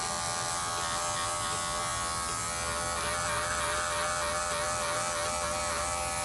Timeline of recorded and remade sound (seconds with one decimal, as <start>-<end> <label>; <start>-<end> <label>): 0.0-6.2 recorded